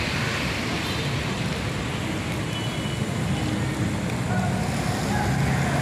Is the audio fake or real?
real